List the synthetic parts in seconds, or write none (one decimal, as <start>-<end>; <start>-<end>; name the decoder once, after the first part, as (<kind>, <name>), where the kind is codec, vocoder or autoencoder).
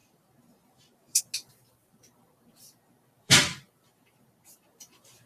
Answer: 0.0-1.2 (vocoder, BigVGAN v2); 1.8-5.3